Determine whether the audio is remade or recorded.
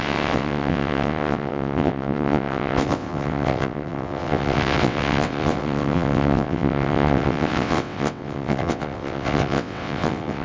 remade